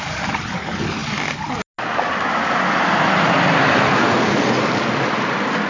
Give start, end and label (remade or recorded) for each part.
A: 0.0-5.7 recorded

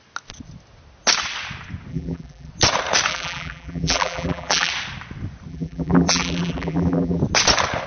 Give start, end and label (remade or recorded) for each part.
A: 0.0-1.9 recorded; 1.9-2.5 remade; 2.5-3.1 recorded; 3.1-4.7 remade; 4.7-5.5 recorded; 5.5-7.2 remade; 7.2-7.9 recorded